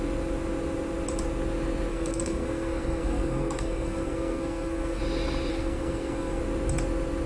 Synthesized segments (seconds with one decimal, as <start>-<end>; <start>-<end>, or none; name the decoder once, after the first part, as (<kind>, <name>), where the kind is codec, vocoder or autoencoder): 1.9-5.0 (codec, SNAC); 5.5-6.4